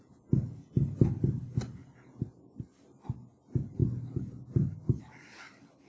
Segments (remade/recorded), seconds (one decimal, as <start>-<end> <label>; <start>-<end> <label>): 0.0-1.8 recorded; 1.8-2.4 remade; 2.4-5.9 recorded